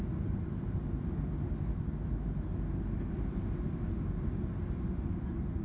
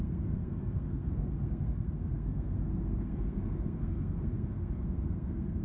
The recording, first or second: first